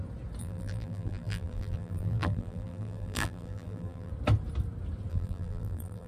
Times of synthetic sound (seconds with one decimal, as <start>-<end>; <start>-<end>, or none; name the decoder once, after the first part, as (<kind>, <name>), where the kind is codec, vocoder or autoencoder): 0.4-4.1 (vocoder, BigVGAN v2); 5.1-6.1